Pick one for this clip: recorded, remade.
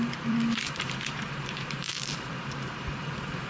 remade